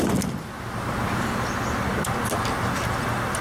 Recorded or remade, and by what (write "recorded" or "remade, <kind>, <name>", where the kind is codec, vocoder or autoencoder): recorded